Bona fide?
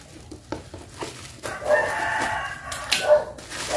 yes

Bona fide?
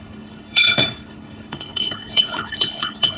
no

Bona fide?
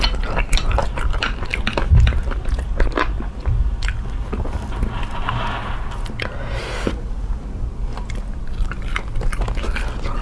yes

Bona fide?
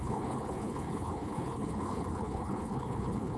no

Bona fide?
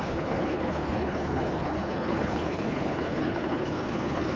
no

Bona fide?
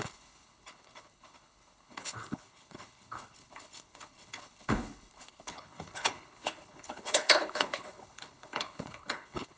no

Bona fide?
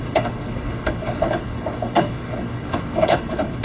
no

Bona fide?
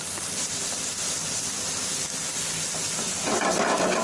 yes